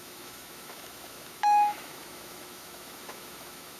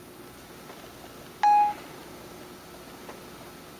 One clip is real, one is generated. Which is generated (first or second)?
first